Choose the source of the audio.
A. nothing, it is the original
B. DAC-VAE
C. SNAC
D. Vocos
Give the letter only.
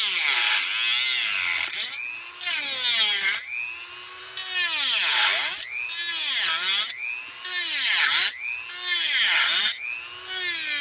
A